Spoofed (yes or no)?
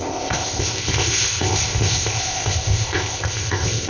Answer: yes